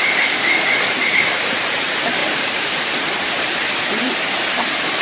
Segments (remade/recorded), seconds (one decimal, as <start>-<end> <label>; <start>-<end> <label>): 0.0-5.0 remade